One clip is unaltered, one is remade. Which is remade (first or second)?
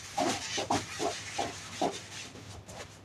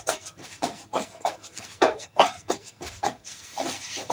second